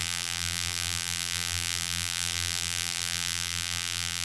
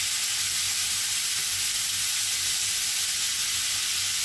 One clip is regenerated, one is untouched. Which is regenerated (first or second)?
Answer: first